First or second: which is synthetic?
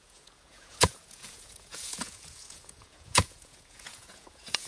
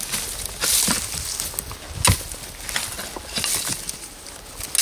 first